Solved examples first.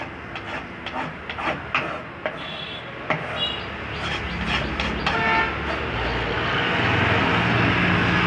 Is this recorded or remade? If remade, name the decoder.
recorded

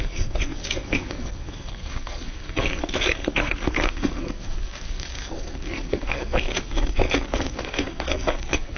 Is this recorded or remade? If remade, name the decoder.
remade, codec, SNAC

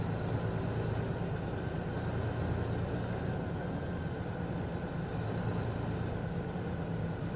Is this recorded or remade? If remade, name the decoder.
recorded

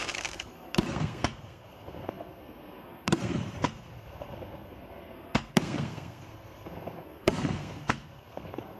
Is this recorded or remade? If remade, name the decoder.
remade, codec, SNAC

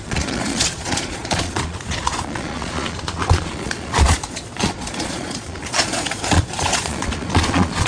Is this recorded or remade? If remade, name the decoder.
remade, vocoder, Vocos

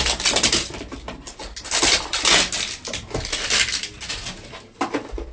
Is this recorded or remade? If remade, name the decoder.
recorded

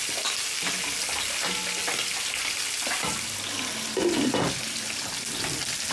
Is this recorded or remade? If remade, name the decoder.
recorded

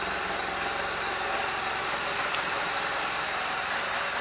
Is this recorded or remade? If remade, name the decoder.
recorded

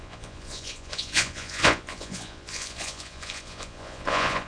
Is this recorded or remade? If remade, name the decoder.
remade, vocoder, Vocos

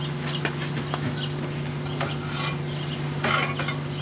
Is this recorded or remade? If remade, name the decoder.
recorded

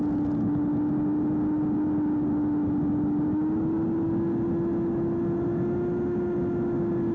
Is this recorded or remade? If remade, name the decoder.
recorded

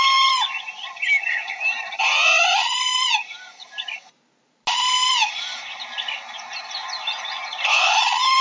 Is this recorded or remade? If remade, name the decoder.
recorded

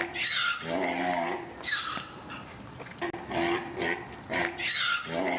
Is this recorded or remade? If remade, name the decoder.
recorded